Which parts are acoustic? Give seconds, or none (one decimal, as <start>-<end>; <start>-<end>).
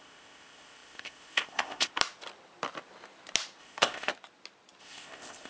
1.9-3.6; 4.1-4.8